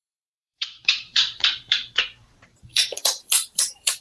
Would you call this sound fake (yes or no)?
yes